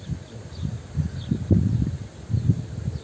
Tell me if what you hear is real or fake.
real